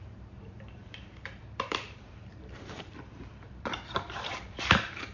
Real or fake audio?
fake